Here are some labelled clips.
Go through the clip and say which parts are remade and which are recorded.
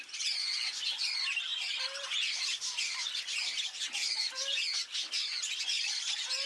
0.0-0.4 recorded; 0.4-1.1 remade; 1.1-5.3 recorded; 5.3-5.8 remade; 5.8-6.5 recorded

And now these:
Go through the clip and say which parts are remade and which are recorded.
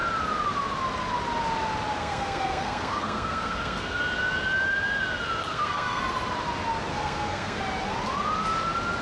0.0-2.0 recorded; 2.0-4.0 remade; 4.0-5.4 recorded; 5.4-6.0 remade; 6.0-6.9 recorded; 6.9-7.6 remade; 7.6-9.0 recorded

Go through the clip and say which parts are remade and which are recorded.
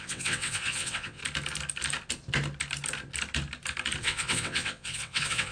0.0-1.2 remade; 1.2-4.0 recorded; 4.0-5.5 remade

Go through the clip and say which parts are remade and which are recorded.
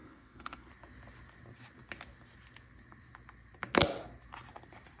0.0-0.7 remade; 0.7-5.0 recorded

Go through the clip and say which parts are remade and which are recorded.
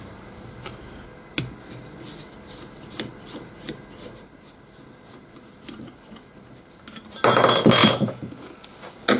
0.0-7.8 recorded; 7.8-8.6 remade; 8.6-9.2 recorded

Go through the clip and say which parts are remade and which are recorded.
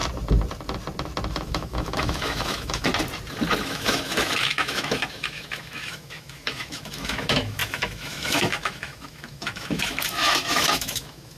0.0-1.3 recorded; 1.3-2.9 remade; 2.9-3.6 recorded; 3.6-11.4 remade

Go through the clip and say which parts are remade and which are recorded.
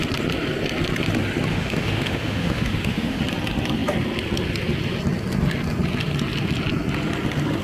0.0-1.5 recorded; 1.5-3.2 remade; 3.2-7.6 recorded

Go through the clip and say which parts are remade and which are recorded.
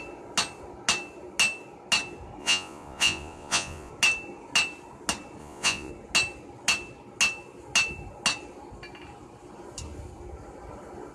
0.0-2.4 recorded; 2.4-3.9 remade; 3.9-5.4 recorded; 5.4-5.9 remade; 5.9-11.1 recorded